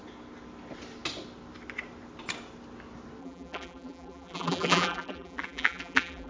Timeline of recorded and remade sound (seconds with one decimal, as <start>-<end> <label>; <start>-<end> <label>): 0.0-3.2 recorded; 3.2-6.3 remade